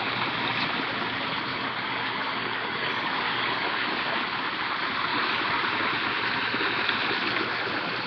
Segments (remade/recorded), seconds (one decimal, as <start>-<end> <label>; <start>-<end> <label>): 0.0-1.5 recorded; 1.5-4.0 remade; 4.0-5.1 recorded; 5.1-5.6 remade; 5.6-8.1 recorded